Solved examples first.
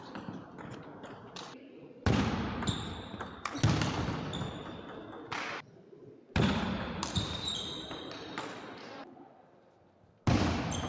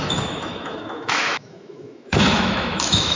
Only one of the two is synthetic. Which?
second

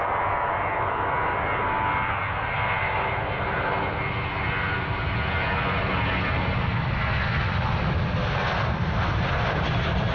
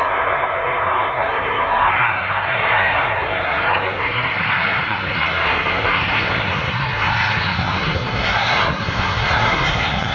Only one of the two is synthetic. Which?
second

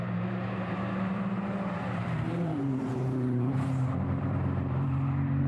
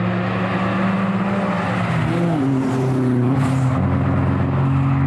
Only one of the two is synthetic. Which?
first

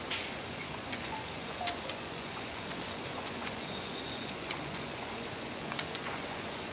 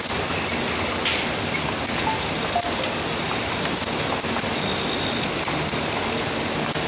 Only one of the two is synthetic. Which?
first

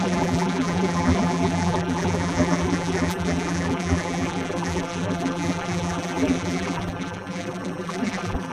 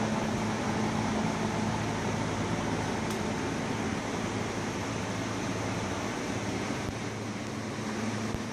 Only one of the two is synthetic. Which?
first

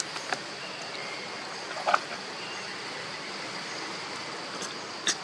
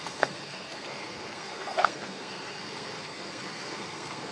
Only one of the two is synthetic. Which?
second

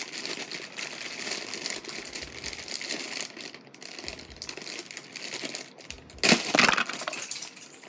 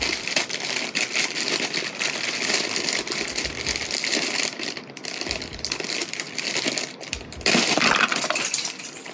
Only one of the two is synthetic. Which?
second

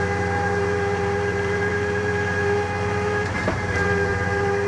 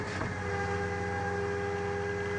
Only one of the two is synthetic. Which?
first